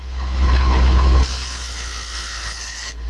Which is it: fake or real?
fake